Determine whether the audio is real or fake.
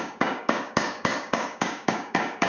fake